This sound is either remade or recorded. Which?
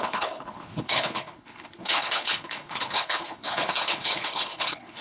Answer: remade